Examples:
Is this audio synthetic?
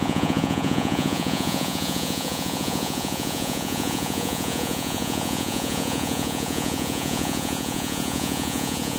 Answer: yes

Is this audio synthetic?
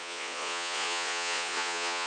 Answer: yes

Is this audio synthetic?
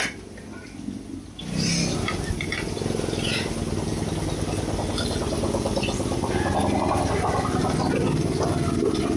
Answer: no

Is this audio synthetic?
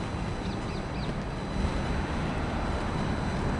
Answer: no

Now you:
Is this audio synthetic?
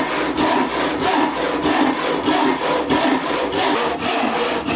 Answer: no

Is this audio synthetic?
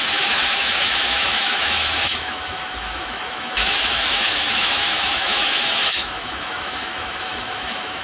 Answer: yes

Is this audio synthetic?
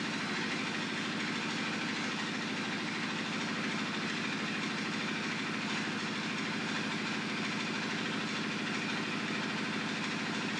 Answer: no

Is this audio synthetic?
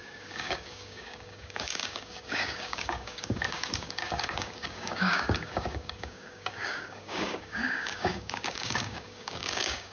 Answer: yes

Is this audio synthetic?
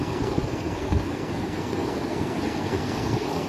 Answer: yes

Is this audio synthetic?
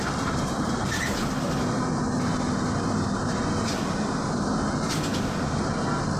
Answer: no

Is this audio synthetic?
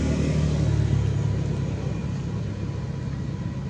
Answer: no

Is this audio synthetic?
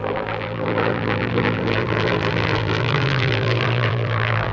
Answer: yes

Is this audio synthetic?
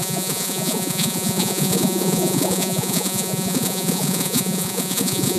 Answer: yes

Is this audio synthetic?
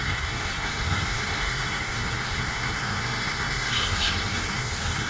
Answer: yes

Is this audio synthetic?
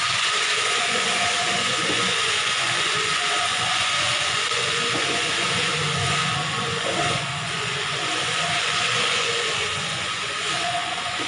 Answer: yes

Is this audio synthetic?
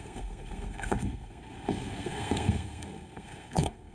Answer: yes